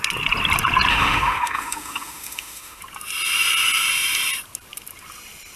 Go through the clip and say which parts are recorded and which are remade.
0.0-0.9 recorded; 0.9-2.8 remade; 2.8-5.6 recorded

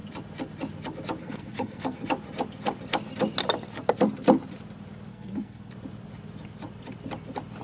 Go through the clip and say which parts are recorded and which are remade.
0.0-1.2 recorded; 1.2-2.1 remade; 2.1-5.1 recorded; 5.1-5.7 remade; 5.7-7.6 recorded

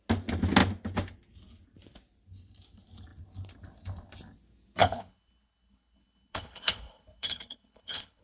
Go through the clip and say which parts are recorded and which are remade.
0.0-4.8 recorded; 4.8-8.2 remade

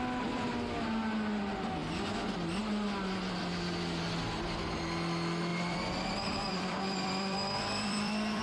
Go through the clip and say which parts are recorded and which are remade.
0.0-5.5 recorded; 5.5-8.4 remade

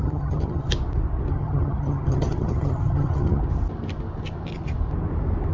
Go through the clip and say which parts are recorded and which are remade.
0.0-0.7 remade; 0.7-1.3 recorded; 1.3-3.4 remade; 3.4-5.5 recorded